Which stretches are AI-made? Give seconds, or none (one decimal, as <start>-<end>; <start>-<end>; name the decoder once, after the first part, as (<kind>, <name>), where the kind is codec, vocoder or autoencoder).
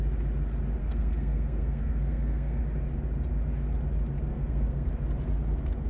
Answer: 0.8-2.6 (codec, SNAC); 4.3-4.9